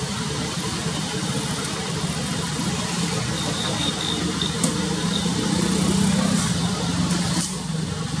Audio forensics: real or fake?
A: real